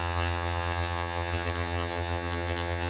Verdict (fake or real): fake